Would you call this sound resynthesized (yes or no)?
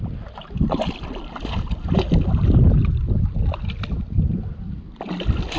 no